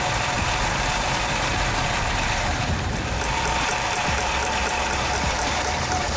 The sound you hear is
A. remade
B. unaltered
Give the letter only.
A